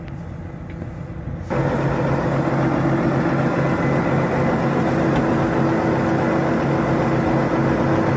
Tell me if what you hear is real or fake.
real